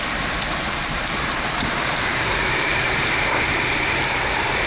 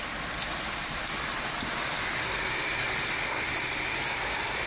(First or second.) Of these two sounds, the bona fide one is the second